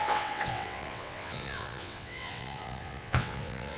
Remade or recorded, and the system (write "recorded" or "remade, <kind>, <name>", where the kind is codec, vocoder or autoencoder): remade, vocoder, WaveNeXt